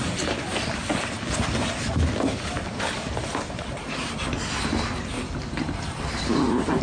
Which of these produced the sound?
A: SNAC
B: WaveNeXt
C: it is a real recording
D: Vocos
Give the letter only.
C